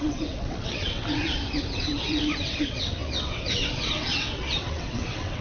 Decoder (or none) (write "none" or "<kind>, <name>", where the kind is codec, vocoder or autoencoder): vocoder, WaveNeXt